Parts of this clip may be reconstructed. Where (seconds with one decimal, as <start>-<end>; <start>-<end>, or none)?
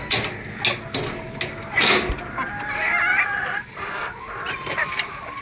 3.2-5.4